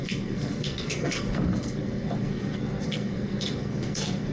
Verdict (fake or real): fake